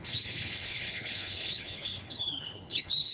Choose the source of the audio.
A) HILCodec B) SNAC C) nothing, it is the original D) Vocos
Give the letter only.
A